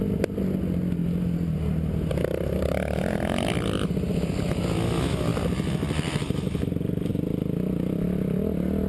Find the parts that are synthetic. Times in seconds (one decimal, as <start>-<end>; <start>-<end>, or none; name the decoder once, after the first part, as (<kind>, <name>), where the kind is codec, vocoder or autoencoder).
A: none